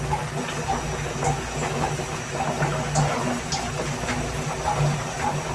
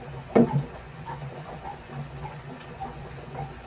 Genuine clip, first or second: first